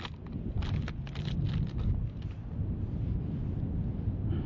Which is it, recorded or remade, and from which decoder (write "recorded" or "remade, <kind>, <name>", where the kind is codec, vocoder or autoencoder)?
recorded